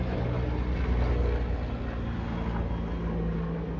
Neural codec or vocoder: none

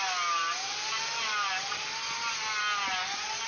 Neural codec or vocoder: none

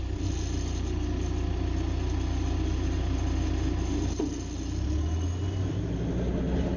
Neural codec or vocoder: none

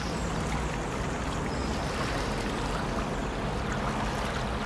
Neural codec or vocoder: none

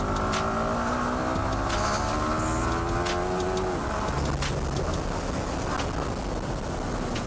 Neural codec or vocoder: none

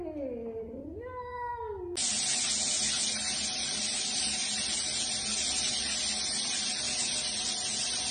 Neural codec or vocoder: none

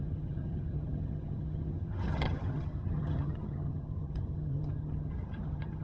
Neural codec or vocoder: vocoder, HiFi-GAN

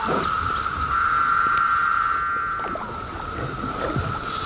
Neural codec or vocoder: none